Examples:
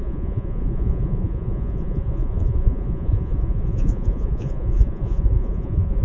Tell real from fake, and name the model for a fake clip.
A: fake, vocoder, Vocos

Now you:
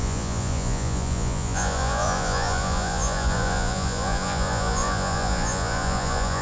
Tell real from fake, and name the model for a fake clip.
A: fake, vocoder, Vocos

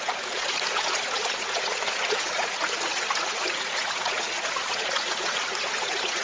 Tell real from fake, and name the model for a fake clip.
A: fake, vocoder, Vocos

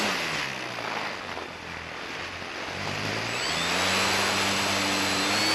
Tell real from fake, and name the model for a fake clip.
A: real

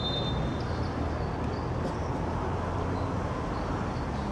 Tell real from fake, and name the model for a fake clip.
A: real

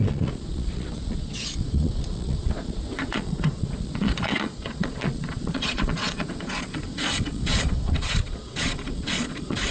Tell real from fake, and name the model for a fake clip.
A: fake, vocoder, Vocos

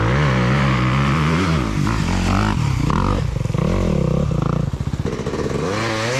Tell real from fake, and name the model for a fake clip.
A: real